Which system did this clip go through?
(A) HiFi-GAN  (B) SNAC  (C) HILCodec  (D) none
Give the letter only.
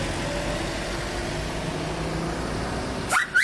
D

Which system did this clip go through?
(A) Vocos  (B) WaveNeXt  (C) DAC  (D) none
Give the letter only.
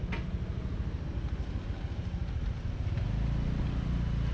D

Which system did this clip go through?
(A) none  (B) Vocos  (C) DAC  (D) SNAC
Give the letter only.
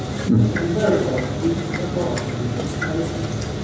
A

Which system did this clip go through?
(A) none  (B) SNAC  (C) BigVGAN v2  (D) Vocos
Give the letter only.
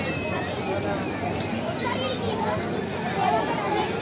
A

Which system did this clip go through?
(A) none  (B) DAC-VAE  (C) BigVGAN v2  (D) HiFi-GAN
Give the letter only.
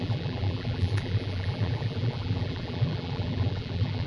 C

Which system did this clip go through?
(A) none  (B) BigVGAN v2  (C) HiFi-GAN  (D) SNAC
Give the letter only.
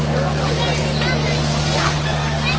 A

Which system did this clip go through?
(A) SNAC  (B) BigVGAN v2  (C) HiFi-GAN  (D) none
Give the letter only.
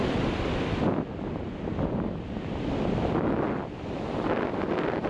D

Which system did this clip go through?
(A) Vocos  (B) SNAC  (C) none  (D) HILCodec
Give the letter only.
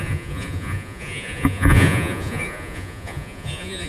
A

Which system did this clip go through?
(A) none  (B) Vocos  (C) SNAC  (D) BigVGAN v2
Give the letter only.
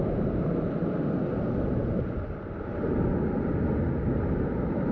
A